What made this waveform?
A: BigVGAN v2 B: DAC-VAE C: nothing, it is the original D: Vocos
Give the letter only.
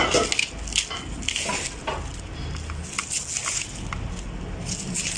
C